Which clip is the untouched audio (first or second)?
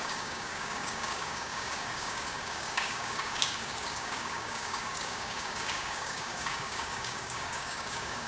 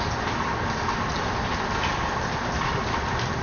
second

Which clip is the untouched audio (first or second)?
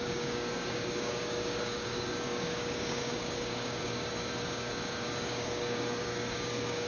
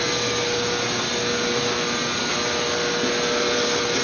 second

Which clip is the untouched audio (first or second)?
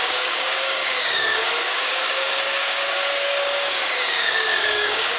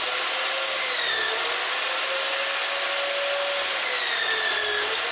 second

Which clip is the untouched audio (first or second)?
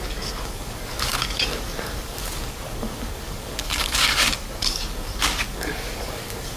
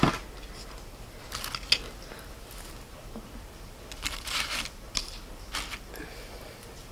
second